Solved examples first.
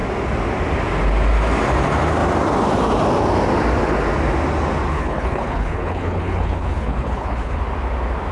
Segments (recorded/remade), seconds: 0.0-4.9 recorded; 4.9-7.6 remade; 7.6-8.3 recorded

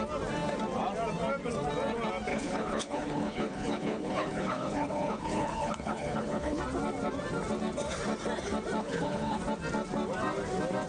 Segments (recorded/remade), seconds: 0.0-2.3 recorded; 2.3-6.6 remade; 6.6-8.8 recorded; 8.8-9.4 remade; 9.4-10.9 recorded

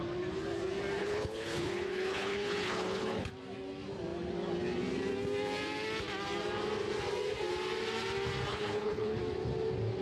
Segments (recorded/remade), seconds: 0.0-1.0 recorded; 1.0-3.3 remade; 3.3-8.5 recorded; 8.5-9.2 remade; 9.2-10.0 recorded

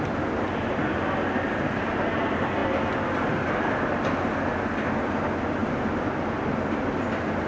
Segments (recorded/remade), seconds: 0.0-7.5 recorded

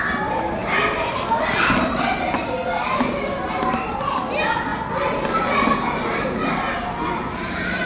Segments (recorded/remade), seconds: 0.0-7.9 recorded